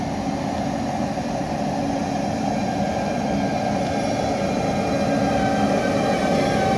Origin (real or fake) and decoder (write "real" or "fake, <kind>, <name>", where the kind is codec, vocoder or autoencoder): real